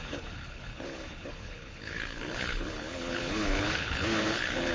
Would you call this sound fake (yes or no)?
yes